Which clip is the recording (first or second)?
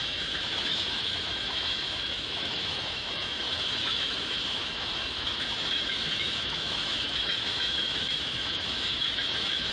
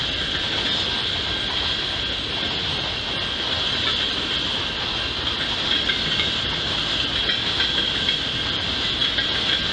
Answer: second